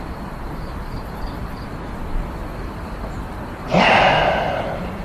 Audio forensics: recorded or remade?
recorded